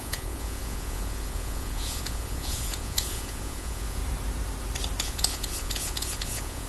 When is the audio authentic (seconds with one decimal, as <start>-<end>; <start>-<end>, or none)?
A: 4.0-5.0